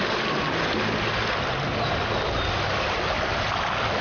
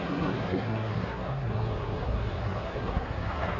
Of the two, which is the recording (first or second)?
first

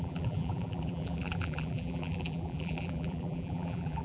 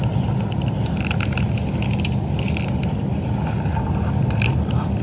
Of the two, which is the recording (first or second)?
second